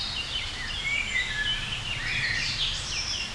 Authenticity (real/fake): fake